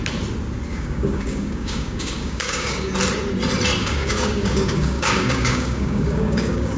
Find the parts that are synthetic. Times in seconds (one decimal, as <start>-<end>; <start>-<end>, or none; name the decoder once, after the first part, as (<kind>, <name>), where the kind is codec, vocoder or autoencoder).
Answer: 0.7-2.9 (codec, DAC); 3.8-6.8